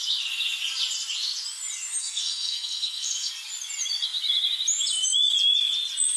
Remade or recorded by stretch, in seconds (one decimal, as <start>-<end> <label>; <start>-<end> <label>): 0.0-2.0 recorded; 2.0-3.3 remade; 3.3-6.2 recorded